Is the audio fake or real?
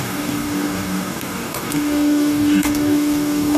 fake